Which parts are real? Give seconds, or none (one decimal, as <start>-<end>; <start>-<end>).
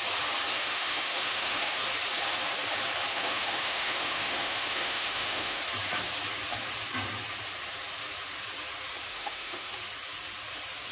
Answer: 0.0-0.5; 1.8-3.1; 5.6-9.1; 9.7-10.9